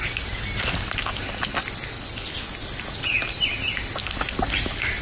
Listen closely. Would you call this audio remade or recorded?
recorded